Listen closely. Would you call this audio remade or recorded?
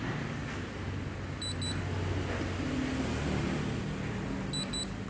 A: recorded